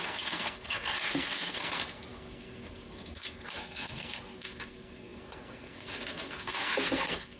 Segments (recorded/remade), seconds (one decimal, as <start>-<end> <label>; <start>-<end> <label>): 0.0-7.4 remade